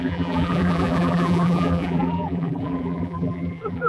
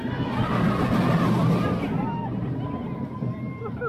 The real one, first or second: second